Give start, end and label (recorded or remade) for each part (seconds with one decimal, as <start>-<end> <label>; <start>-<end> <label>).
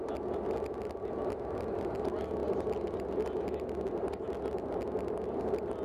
0.0-5.8 recorded